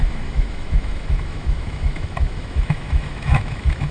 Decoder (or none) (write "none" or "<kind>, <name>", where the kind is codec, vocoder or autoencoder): autoencoder, DAC-VAE